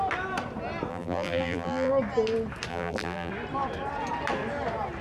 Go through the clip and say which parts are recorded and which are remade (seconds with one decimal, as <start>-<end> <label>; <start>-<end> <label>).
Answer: 0.0-0.9 recorded; 0.9-1.9 remade; 1.9-2.7 recorded; 2.7-3.3 remade; 3.3-5.0 recorded